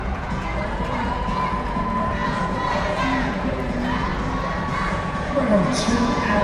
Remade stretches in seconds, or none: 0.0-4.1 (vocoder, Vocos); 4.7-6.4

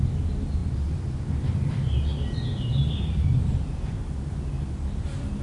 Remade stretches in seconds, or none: none

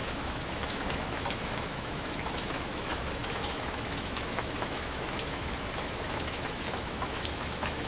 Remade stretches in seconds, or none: 0.0-7.9 (autoencoder, DAC-VAE)

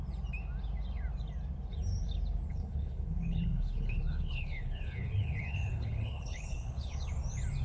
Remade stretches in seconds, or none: 2.5-7.1 (codec, HILCodec)

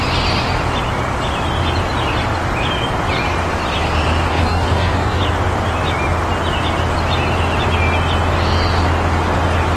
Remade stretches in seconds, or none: 4.3-5.2 (codec, DAC)

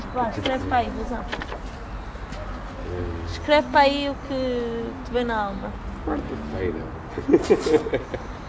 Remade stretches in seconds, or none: none